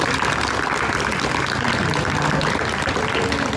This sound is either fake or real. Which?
real